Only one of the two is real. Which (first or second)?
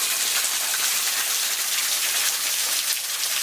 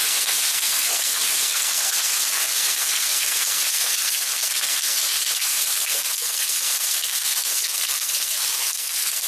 first